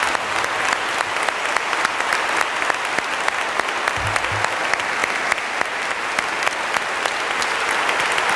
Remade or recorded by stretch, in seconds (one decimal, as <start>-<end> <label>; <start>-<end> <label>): 0.0-8.4 recorded